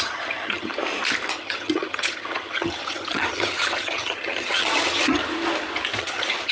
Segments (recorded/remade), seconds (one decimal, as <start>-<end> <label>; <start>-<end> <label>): 0.0-0.7 remade; 0.7-1.3 recorded; 1.3-5.2 remade; 5.2-6.0 recorded; 6.0-6.5 remade

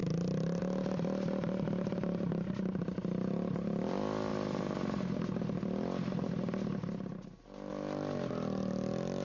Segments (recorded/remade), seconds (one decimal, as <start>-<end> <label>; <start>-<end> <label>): 0.0-9.2 recorded